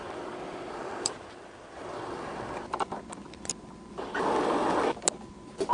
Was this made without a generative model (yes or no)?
yes